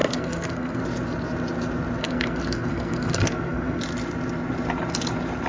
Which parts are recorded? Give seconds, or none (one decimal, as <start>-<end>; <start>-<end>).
0.8-2.0; 3.8-5.5